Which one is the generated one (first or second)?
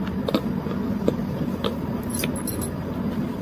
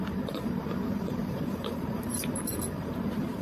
second